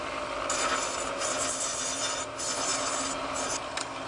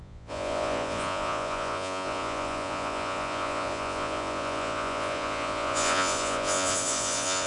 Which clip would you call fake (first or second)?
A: second